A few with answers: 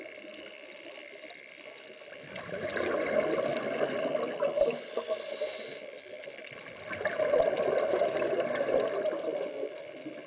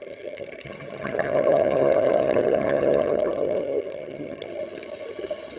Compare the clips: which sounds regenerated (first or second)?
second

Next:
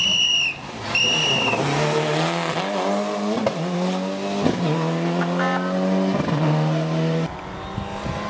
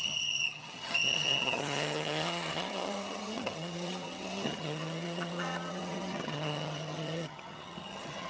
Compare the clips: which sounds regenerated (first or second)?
second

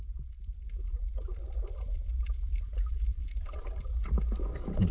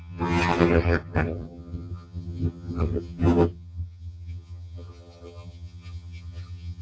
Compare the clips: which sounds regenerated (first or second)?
second